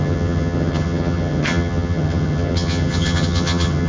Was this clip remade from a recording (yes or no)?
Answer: yes